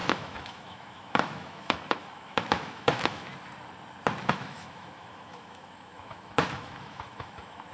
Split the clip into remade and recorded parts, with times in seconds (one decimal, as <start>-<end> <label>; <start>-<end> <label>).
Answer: 0.0-3.3 remade; 3.3-4.3 recorded; 4.3-7.7 remade